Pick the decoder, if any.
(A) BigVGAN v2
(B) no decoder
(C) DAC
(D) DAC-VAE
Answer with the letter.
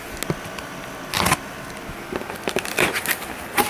B